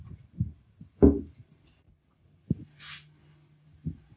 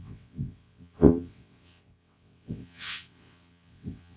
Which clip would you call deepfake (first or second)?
second